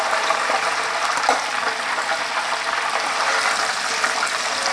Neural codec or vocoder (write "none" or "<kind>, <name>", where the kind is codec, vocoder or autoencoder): vocoder, BigVGAN v2